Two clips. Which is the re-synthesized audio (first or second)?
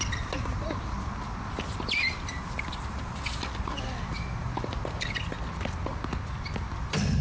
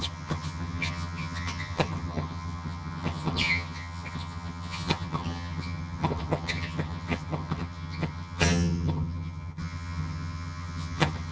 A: second